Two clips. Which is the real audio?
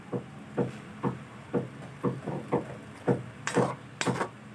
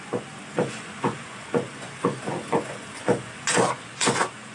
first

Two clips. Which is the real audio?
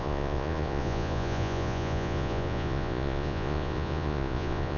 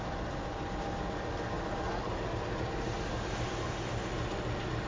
second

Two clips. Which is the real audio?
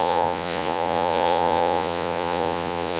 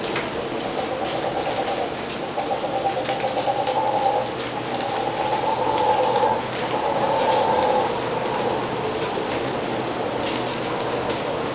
second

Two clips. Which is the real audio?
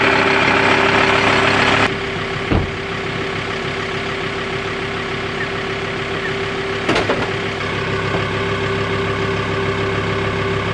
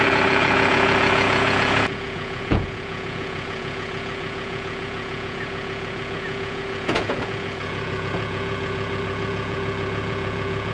first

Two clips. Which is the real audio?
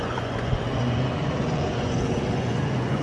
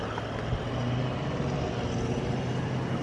second